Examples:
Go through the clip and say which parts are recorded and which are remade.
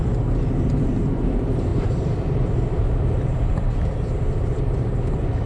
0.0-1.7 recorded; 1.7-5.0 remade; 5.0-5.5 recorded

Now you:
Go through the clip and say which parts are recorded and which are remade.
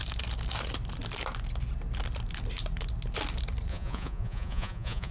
0.0-3.7 recorded; 3.7-5.1 remade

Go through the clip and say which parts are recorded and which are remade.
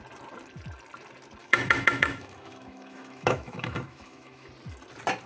0.0-1.4 recorded; 1.4-4.5 remade; 4.5-5.3 recorded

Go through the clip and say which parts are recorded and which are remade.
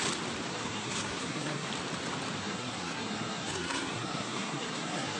0.0-0.5 recorded; 0.5-1.7 remade; 1.7-2.4 recorded; 2.4-5.2 remade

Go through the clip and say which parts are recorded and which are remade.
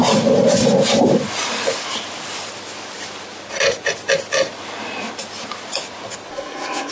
0.0-6.3 recorded; 6.3-6.9 remade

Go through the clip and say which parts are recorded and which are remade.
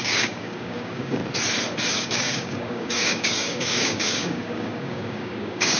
0.0-1.2 remade; 1.2-1.9 recorded; 1.9-5.8 remade